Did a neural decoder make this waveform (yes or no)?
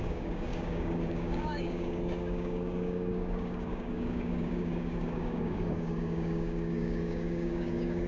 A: yes